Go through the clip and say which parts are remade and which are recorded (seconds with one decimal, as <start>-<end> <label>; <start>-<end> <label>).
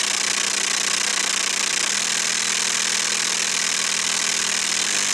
0.0-5.1 recorded